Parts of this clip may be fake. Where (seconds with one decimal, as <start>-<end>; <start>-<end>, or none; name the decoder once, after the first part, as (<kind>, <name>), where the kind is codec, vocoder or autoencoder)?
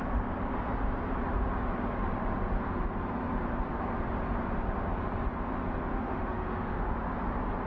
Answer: 5.9-6.9 (autoencoder, DAC-VAE)